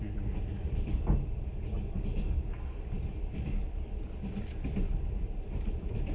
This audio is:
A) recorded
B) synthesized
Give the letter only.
B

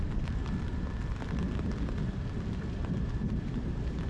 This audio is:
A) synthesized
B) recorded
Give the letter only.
A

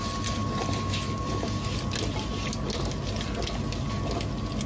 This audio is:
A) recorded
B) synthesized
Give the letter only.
A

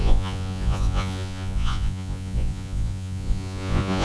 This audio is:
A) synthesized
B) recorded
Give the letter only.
A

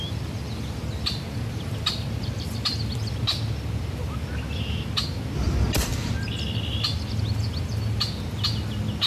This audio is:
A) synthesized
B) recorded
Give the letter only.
B